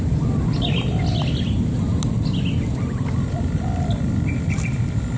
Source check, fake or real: real